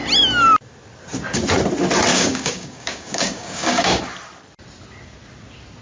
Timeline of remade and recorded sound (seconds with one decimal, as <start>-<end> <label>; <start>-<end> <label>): 0.0-2.1 recorded; 2.1-4.0 remade; 4.0-5.8 recorded